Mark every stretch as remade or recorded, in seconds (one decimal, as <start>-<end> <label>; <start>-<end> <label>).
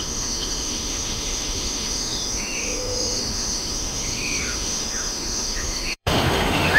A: 0.0-6.8 remade